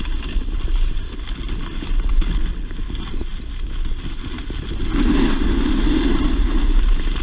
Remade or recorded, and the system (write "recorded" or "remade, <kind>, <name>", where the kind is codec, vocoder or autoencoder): recorded